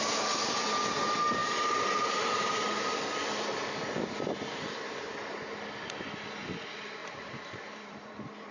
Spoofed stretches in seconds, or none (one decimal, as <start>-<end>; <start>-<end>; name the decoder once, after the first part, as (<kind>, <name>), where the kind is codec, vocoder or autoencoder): 1.4-3.0 (vocoder, BigVGAN v2); 7.0-8.1